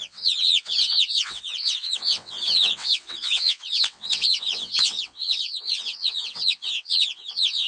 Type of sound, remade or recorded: remade